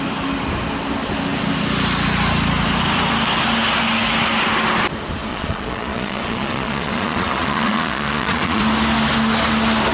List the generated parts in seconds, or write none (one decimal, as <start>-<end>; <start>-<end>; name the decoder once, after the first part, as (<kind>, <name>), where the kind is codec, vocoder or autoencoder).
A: 5.3-8.6 (vocoder, Vocos)